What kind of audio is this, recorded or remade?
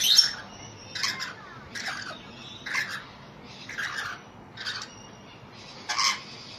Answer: recorded